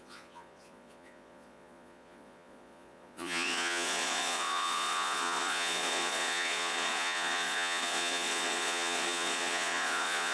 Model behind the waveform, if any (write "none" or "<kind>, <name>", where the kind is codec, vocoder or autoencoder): vocoder, Vocos